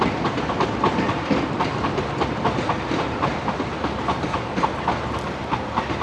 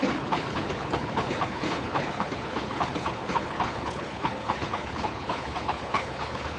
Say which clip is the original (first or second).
first